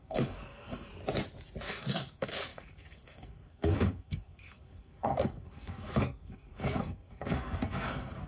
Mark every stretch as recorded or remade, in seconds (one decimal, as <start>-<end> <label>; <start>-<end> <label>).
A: 0.0-0.9 remade; 0.9-1.7 recorded; 1.7-8.3 remade